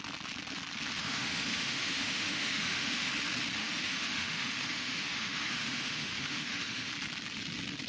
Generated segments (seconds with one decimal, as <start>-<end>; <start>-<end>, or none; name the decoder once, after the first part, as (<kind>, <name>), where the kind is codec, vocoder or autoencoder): 1.0-3.1 (autoencoder, DAC-VAE); 3.6-6.9